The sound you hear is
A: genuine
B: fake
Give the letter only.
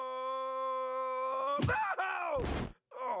A